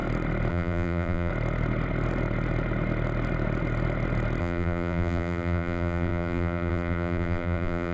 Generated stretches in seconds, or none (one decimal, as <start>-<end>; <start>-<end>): 0.5-1.3; 4.4-7.9

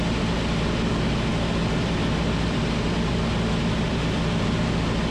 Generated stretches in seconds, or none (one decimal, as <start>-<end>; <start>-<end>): 0.0-5.1